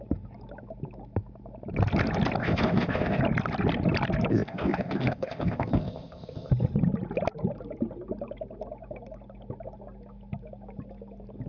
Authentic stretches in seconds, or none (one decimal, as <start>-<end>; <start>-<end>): 0.0-2.4; 3.2-4.3; 6.5-11.5